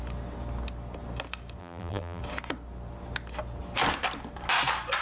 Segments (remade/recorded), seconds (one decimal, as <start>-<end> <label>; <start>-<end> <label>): 0.0-1.6 recorded; 1.6-2.2 remade; 2.2-5.0 recorded